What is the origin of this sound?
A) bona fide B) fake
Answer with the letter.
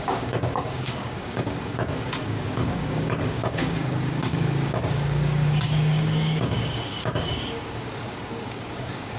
B